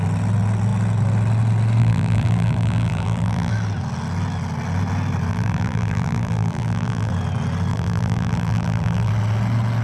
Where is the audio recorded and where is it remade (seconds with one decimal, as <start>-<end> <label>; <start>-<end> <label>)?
0.0-1.8 recorded; 1.8-3.5 remade; 3.5-5.3 recorded; 5.3-7.1 remade; 7.1-7.7 recorded; 7.7-9.1 remade; 9.1-9.8 recorded